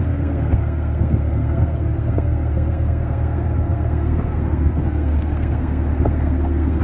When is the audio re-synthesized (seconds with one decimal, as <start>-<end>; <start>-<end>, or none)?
0.0-6.8